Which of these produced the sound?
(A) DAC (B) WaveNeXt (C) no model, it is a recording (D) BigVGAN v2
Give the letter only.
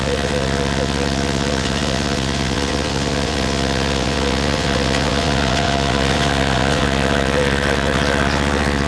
B